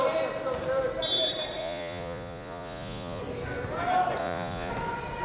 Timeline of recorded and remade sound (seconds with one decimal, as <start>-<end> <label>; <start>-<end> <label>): 0.0-1.6 recorded; 1.6-3.2 remade; 3.2-4.2 recorded; 4.2-4.7 remade; 4.7-5.2 recorded